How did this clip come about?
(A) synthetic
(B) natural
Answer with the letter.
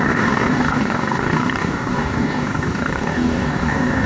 A